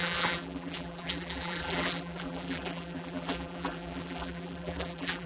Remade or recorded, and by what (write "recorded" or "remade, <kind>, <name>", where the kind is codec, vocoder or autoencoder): remade, vocoder, BigVGAN v2